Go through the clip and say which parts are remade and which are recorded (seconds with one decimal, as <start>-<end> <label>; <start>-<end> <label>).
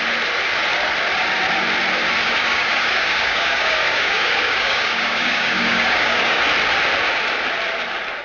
0.0-2.2 recorded; 2.2-6.4 remade; 6.4-8.2 recorded